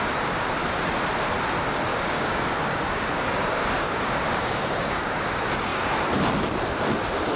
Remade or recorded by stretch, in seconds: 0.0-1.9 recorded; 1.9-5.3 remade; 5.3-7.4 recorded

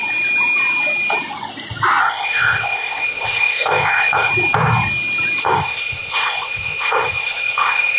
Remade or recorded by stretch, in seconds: 0.0-2.0 recorded; 2.0-4.3 remade; 4.3-5.4 recorded; 5.4-8.0 remade

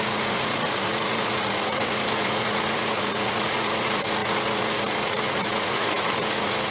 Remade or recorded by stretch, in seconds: 0.0-6.7 remade

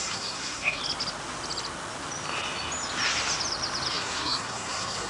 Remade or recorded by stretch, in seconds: 0.0-0.8 remade; 0.8-3.9 recorded; 3.9-5.1 remade

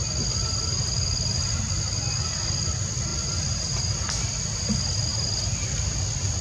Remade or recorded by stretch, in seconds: 0.0-6.4 recorded

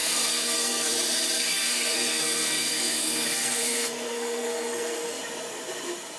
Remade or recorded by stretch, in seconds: 0.0-0.9 remade; 0.9-1.5 recorded; 1.5-5.2 remade; 5.2-6.2 recorded

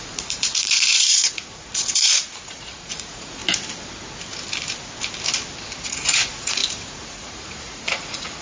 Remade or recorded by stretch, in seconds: 0.0-3.4 remade; 3.4-5.8 recorded; 5.8-8.4 remade